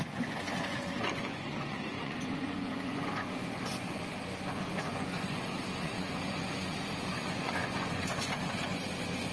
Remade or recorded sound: remade